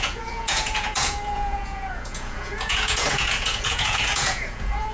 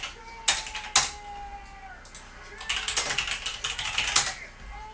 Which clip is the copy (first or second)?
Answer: first